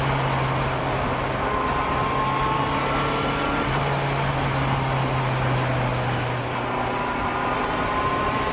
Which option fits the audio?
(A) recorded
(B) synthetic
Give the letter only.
A